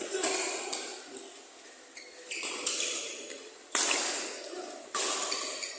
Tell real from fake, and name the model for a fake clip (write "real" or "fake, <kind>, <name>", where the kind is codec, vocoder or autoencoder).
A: real